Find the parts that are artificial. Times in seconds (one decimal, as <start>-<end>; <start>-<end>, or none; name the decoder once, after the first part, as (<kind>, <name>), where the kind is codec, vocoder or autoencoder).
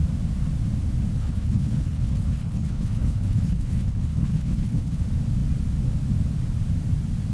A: 1.2-5.0 (codec, HILCodec)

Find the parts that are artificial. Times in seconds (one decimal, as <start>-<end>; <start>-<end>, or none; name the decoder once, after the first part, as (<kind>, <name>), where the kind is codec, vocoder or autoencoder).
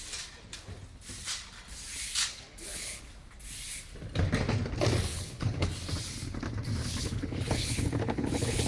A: 2.3-3.0 (codec, HILCodec); 5.1-5.7; 6.8-8.7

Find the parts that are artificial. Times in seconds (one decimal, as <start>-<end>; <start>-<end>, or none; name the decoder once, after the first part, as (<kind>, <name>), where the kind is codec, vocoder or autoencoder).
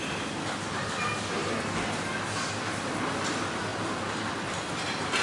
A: none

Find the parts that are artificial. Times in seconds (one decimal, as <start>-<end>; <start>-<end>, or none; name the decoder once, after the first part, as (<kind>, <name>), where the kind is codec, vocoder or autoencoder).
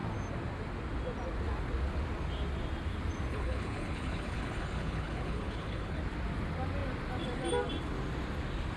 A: 3.3-6.0 (codec, HILCodec)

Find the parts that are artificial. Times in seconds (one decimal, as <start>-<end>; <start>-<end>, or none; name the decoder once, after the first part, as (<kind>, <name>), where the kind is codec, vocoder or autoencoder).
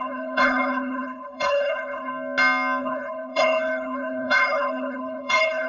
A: 0.0-2.1 (codec, HILCodec); 2.8-5.7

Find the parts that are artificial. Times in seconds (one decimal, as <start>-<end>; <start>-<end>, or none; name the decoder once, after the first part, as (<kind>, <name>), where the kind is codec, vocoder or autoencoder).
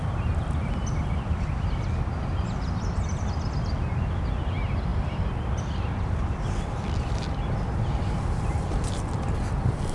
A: none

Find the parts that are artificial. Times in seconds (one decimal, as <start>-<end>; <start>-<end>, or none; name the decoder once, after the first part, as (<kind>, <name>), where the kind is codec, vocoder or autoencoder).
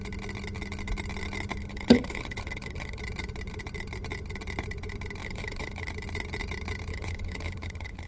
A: 1.6-3.0 (codec, HILCodec); 5.2-5.9; 6.9-8.1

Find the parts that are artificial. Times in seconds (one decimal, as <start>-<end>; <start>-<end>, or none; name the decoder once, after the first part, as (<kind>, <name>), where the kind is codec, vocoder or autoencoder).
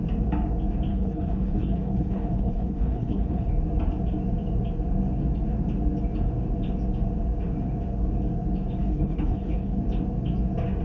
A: 0.9-3.5 (codec, HILCodec); 8.8-9.8